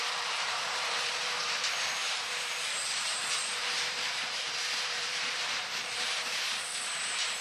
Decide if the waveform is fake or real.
fake